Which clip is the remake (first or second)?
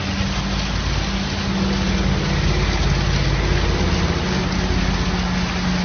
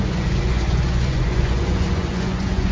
second